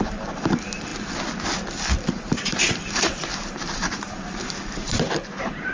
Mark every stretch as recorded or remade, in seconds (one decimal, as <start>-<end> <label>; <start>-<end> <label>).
0.0-0.9 remade; 0.9-2.1 recorded; 2.1-5.7 remade